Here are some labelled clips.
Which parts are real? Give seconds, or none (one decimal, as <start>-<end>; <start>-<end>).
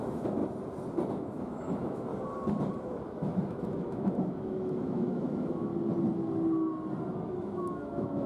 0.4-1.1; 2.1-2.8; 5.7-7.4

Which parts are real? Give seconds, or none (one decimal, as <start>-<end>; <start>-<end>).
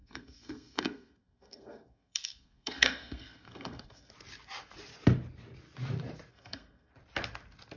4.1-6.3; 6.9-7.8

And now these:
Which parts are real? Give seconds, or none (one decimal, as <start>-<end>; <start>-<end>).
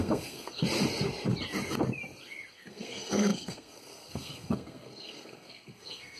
0.6-2.5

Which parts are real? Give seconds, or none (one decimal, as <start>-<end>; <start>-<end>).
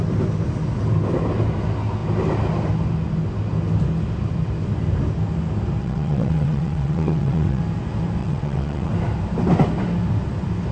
0.0-5.8; 7.6-8.2; 8.9-10.7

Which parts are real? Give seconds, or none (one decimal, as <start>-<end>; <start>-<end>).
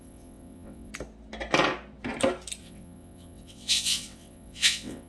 0.9-2.6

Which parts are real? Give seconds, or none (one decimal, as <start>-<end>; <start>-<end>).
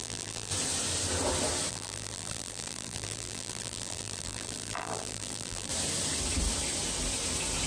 0.5-1.7; 5.7-7.7